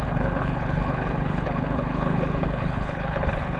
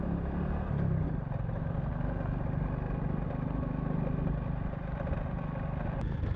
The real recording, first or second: second